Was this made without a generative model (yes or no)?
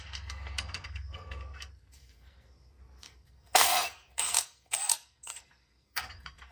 no